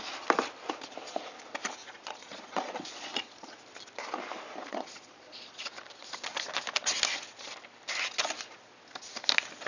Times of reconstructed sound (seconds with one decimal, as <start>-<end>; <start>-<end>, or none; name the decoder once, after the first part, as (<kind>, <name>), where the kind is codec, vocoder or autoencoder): 1.8-3.6 (vocoder, Vocos); 4.7-5.6